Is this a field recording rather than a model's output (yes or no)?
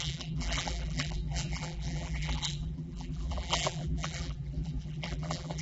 no